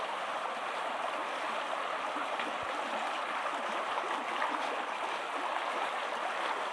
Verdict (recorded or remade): recorded